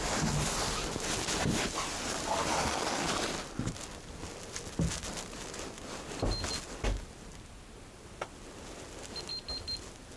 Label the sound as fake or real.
real